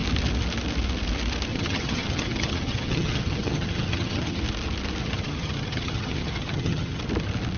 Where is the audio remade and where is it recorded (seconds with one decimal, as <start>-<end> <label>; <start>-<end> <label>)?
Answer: 0.0-1.5 recorded; 1.5-4.4 remade; 4.4-5.0 recorded; 5.0-7.0 remade; 7.0-7.6 recorded